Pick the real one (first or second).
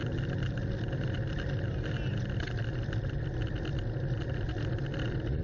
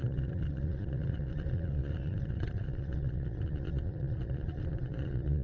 first